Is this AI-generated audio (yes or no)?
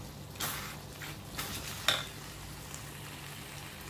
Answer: no